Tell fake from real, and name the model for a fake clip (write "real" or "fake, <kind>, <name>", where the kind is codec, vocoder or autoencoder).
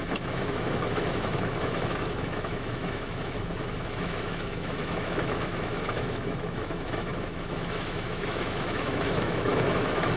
fake, autoencoder, DAC-VAE